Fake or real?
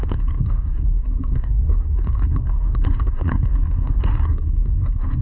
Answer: fake